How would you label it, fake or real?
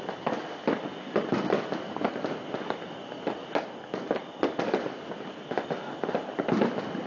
real